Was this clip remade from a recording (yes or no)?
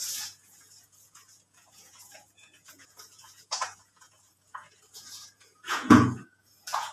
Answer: yes